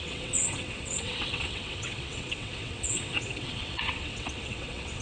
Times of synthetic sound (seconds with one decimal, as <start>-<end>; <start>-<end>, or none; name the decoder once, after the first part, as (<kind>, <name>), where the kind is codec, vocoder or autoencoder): 0.0-5.0 (vocoder, WaveNeXt)